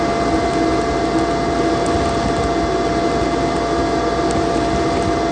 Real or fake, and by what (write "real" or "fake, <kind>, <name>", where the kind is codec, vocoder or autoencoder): real